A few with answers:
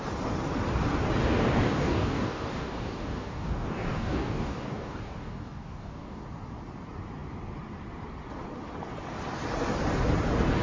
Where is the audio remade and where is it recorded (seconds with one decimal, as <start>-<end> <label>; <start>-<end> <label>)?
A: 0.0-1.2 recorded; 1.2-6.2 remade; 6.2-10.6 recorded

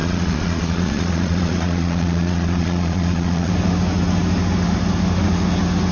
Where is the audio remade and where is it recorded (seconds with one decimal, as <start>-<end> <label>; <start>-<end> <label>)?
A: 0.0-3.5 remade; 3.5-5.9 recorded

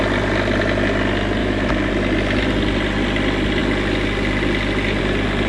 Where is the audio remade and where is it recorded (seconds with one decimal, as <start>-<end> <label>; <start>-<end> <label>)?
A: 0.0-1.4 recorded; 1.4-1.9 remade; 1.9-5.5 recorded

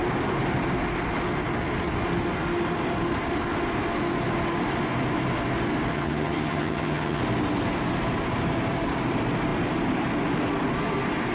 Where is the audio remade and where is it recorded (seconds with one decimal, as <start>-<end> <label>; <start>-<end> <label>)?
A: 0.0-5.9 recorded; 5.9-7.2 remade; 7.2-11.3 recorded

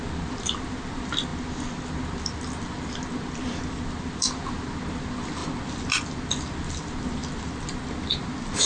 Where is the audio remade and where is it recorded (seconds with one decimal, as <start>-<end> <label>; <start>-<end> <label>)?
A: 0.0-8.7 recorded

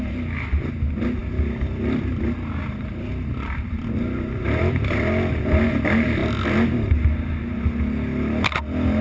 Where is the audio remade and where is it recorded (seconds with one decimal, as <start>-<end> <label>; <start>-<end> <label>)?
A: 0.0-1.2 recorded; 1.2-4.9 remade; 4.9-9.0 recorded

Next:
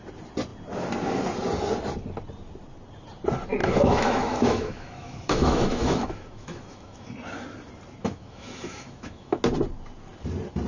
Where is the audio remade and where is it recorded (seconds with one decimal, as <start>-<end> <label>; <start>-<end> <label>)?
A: 0.0-3.6 recorded; 3.6-7.1 remade; 7.1-8.0 recorded; 8.0-9.4 remade; 9.4-10.7 recorded

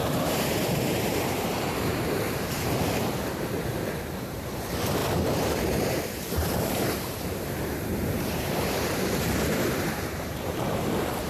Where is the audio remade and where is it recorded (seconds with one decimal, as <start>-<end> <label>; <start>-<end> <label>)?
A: 0.0-11.3 remade